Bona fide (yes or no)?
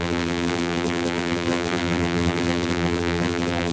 no